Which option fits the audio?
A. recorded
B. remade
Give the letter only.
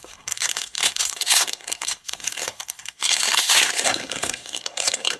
B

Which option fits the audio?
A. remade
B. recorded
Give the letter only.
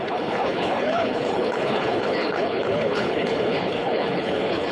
A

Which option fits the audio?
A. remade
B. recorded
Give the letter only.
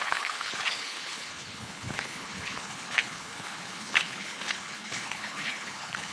A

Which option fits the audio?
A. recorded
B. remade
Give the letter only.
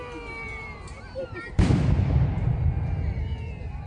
A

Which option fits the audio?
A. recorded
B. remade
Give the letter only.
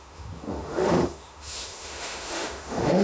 B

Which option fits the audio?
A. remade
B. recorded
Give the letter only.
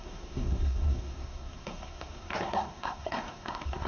A